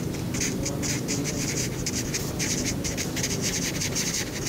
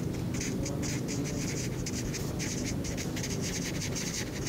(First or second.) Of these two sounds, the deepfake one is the first